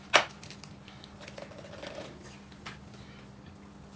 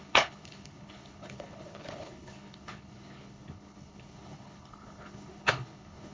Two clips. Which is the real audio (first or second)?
first